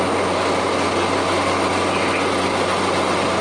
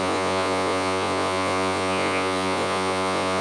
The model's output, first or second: second